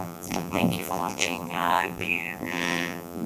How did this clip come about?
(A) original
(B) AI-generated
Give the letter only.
B